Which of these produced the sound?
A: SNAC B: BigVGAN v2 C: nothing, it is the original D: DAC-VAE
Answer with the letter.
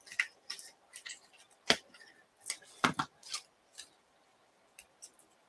C